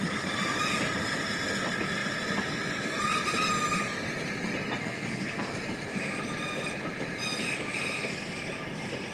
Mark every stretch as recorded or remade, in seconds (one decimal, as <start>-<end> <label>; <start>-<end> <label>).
0.0-4.8 recorded; 4.8-5.5 remade; 5.5-9.1 recorded

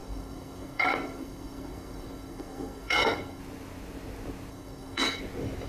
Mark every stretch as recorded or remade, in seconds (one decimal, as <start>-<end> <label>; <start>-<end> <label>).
0.0-3.4 remade; 3.4-4.5 recorded; 4.5-5.2 remade; 5.2-5.7 recorded

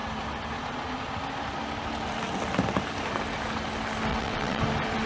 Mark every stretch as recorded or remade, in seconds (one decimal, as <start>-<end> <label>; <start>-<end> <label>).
0.0-4.1 recorded; 4.1-4.6 remade; 4.6-5.1 recorded

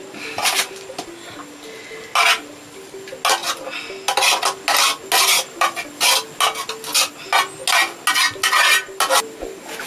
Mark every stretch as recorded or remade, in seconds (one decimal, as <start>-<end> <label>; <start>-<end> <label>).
0.0-9.9 recorded

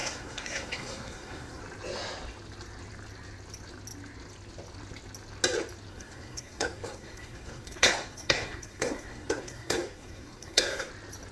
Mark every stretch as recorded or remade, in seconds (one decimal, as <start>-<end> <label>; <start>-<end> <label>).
0.0-1.6 remade; 1.6-5.9 recorded; 5.9-10.9 remade; 10.9-11.3 recorded